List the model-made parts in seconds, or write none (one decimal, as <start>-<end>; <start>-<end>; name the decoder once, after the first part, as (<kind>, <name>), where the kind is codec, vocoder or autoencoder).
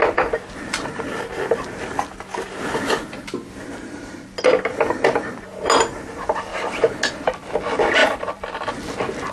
8.0-8.7 (vocoder, BigVGAN v2)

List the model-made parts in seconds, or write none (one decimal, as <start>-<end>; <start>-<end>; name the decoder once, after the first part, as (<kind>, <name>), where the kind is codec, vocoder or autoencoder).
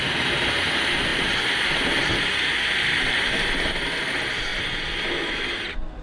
none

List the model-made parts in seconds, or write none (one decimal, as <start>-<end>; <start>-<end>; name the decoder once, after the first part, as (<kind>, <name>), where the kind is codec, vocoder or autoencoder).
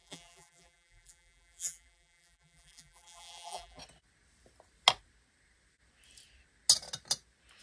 0.0-3.8 (vocoder, BigVGAN v2)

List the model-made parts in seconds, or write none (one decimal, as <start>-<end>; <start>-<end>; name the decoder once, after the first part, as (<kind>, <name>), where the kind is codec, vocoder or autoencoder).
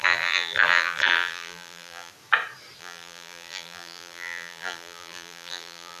0.0-2.1 (vocoder, BigVGAN v2); 2.8-6.0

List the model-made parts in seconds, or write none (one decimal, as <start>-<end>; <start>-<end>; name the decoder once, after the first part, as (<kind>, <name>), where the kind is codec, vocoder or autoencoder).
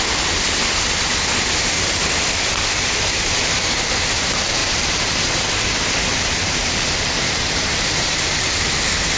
4.6-8.1 (vocoder, BigVGAN v2)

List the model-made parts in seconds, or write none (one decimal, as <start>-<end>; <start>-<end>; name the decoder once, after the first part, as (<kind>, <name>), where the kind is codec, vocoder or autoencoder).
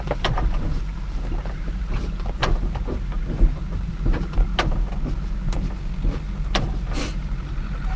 0.0-4.5 (vocoder, BigVGAN v2); 6.7-8.0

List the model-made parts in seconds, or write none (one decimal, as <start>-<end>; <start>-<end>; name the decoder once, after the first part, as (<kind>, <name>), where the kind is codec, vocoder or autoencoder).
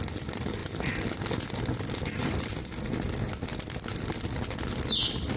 none